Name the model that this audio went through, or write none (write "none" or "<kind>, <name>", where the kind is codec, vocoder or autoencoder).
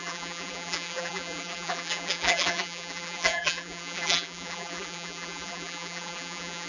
vocoder, BigVGAN v2